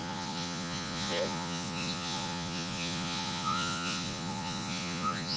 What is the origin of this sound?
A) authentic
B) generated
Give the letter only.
B